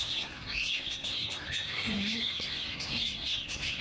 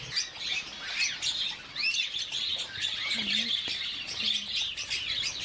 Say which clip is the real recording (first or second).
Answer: second